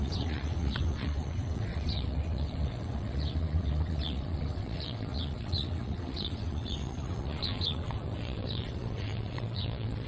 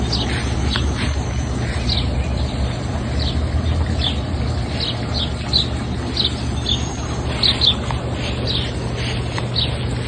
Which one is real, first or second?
second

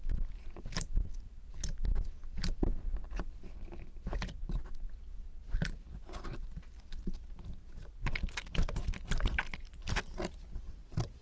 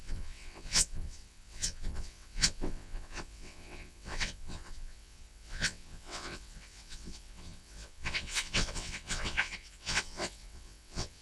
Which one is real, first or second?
first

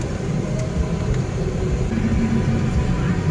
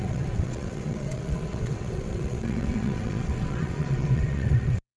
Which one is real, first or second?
first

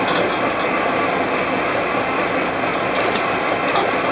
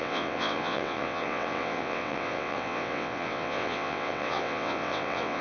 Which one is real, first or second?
first